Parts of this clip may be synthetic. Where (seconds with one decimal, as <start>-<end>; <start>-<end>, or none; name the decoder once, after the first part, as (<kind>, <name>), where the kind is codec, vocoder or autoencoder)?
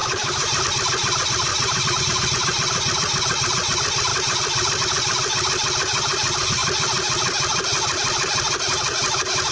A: 0.0-0.6 (vocoder, BigVGAN v2); 1.5-2.0